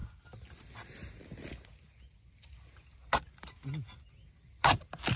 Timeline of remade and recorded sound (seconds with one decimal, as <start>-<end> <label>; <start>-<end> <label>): 0.0-5.2 recorded